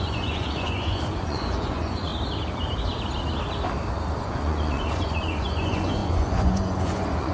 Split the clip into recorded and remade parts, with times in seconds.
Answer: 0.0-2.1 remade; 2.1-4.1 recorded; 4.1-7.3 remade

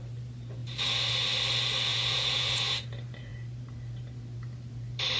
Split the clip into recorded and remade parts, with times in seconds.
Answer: 0.0-1.9 recorded; 1.9-2.7 remade; 2.7-5.2 recorded